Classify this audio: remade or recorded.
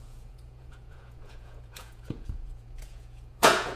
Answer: remade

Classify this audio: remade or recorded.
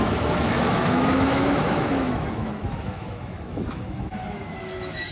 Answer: remade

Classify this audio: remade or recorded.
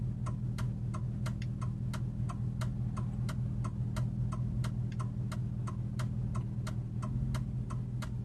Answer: recorded